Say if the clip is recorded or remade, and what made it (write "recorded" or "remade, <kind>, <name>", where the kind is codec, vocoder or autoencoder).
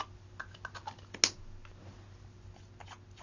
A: recorded